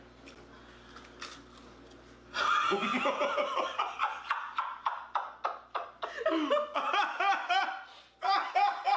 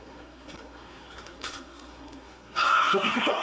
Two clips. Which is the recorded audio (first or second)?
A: first